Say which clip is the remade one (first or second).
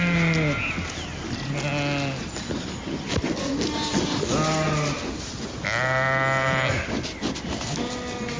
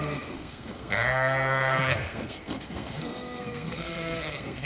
second